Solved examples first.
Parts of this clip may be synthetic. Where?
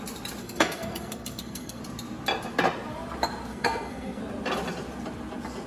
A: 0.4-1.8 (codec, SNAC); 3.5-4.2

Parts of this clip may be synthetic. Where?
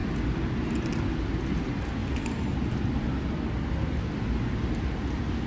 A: none